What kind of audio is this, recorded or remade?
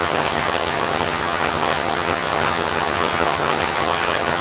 remade